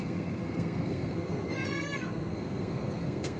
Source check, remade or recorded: remade